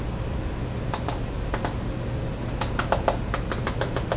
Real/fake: real